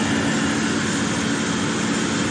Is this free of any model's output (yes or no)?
yes